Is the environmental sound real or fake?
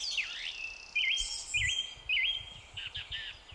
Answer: real